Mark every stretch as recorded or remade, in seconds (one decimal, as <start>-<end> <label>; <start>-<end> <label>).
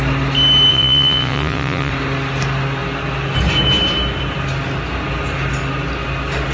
0.0-0.7 recorded; 0.7-1.9 remade; 1.9-6.5 recorded